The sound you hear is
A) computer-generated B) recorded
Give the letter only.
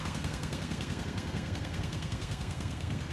A